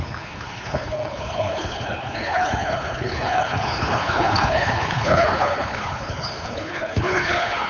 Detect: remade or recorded remade